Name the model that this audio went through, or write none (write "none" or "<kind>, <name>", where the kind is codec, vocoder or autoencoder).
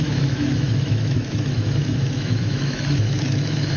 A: autoencoder, DAC-VAE